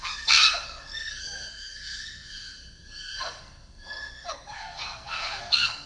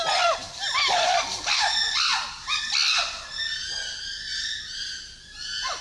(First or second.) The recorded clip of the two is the second